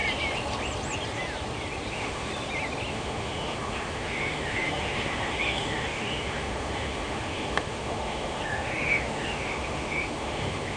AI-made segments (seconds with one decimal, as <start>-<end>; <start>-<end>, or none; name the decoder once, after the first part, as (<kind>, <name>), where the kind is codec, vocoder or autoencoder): 1.9-2.3 (autoencoder, DAC-VAE); 2.9-10.8